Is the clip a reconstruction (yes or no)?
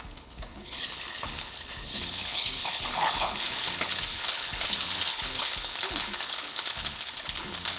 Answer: yes